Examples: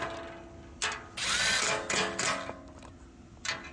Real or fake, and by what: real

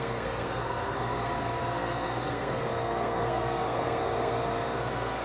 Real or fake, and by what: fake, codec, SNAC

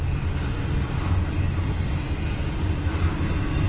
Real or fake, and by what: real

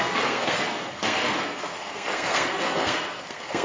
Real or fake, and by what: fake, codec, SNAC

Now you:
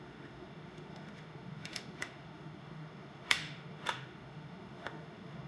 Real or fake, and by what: fake, autoencoder, DAC-VAE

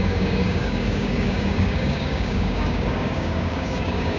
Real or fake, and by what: fake, codec, DAC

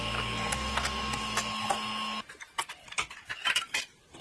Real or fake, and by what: real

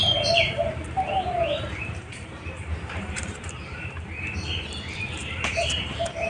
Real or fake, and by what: fake, vocoder, BigVGAN v2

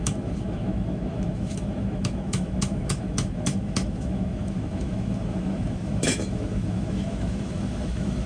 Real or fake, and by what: fake, autoencoder, DAC-VAE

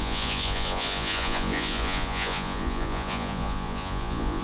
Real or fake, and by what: fake, vocoder, Vocos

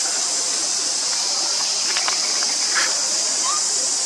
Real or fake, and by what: real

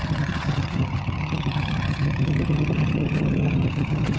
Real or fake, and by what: fake, vocoder, HiFi-GAN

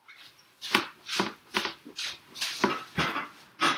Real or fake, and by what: fake, vocoder, BigVGAN v2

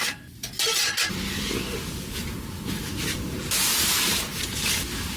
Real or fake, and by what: real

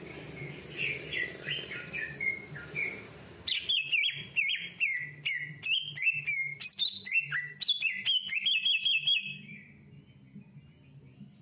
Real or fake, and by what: real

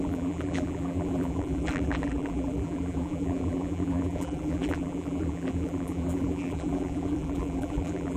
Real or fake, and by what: fake, vocoder, BigVGAN v2